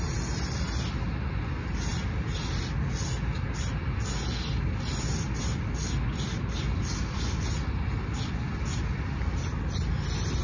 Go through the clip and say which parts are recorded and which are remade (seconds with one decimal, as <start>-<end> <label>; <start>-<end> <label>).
0.0-10.4 recorded